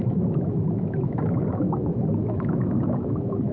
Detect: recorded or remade remade